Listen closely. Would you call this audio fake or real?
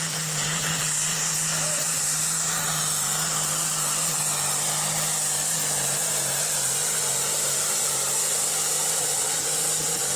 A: real